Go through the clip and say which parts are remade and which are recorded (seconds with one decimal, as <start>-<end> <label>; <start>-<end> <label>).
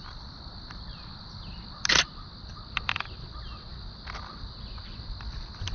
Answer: 0.0-5.7 recorded